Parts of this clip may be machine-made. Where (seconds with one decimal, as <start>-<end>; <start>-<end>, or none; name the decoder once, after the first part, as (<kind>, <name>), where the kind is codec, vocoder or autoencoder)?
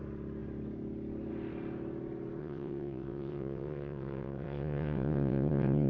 2.4-5.9 (vocoder, WaveNeXt)